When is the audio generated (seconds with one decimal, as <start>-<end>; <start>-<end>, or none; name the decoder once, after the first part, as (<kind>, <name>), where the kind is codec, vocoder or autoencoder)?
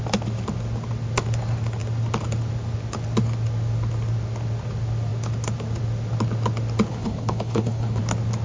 6.9-8.0 (codec, HILCodec)